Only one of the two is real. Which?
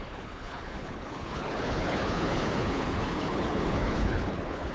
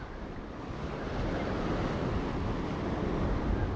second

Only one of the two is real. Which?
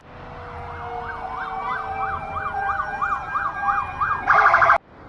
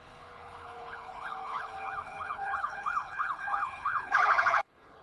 first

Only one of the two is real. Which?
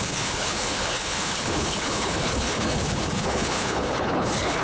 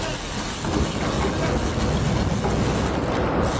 second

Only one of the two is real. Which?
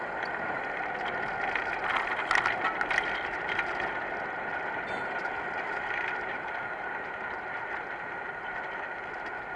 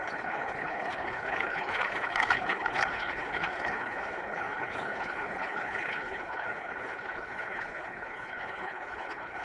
first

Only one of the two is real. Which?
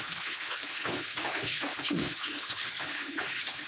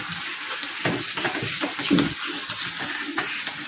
second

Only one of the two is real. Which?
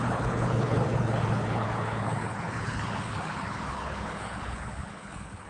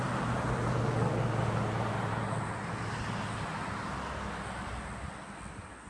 second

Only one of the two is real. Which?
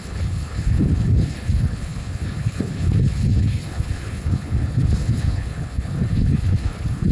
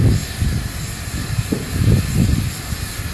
second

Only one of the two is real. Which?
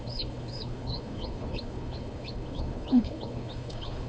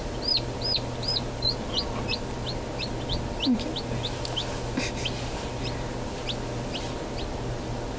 second